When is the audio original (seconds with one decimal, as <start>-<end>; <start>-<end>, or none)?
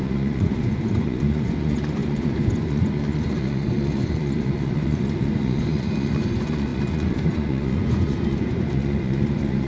none